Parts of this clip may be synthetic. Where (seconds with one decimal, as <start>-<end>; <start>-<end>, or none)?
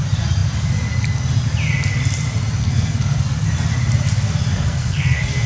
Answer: 2.6-3.2; 4.5-5.5